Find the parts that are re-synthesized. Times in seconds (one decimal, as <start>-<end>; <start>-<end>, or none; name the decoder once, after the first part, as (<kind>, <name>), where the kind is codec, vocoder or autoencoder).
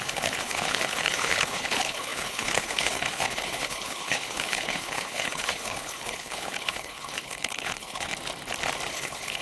0.0-8.1 (codec, HILCodec); 8.9-9.4